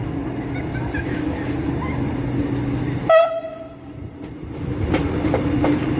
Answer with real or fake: real